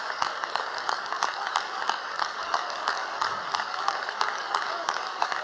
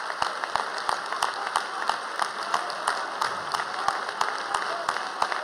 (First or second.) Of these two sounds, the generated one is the first